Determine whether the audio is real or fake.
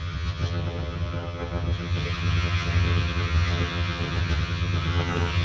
fake